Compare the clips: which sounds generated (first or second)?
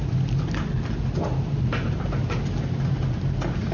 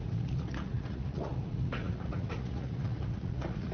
second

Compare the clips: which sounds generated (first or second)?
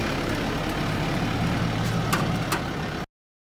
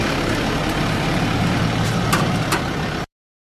second